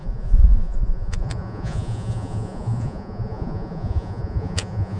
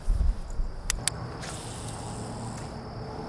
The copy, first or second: first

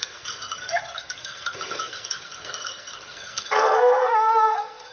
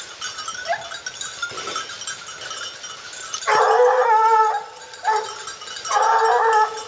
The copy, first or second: first